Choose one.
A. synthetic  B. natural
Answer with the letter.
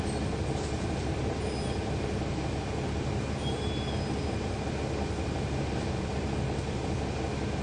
B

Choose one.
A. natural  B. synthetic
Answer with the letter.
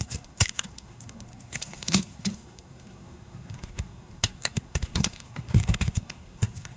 B